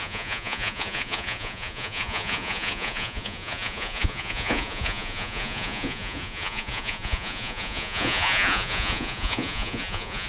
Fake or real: fake